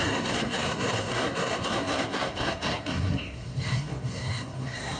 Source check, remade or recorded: remade